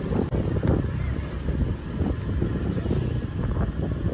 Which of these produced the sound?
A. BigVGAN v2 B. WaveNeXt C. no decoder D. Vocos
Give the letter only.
A